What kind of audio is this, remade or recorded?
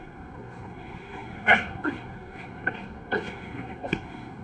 remade